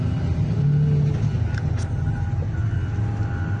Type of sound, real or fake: real